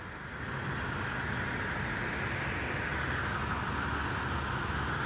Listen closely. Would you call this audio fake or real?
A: real